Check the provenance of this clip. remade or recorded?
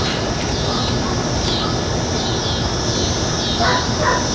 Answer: recorded